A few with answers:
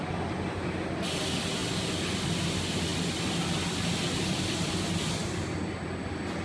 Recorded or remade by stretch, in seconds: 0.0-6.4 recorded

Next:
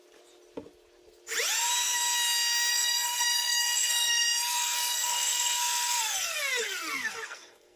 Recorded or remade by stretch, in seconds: 0.0-2.7 recorded; 2.7-7.8 remade

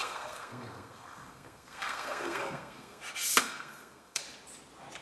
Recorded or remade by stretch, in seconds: 0.0-3.0 remade; 3.0-3.4 recorded; 3.4-4.2 remade; 4.2-5.0 recorded